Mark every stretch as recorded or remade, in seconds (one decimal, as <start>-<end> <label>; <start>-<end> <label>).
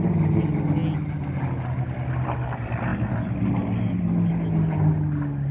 0.0-5.5 recorded